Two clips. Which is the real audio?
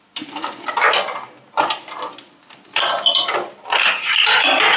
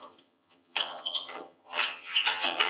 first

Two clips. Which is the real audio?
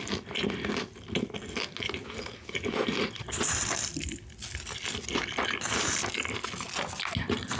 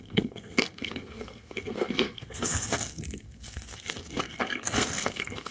first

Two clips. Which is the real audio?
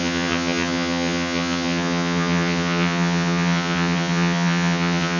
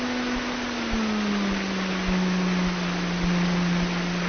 second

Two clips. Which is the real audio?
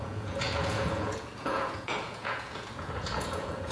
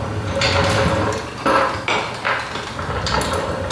second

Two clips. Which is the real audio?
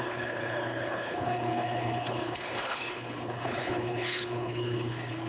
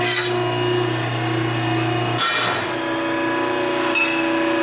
second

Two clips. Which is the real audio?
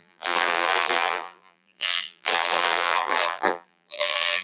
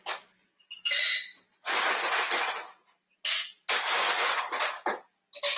second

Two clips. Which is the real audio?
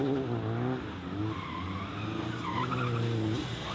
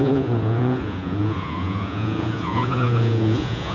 first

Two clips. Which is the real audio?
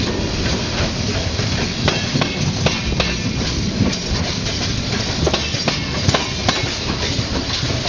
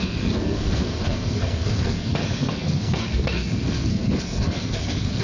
first